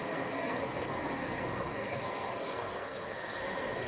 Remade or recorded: remade